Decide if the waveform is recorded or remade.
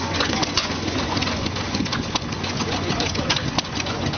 remade